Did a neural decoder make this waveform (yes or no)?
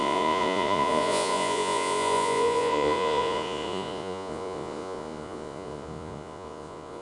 yes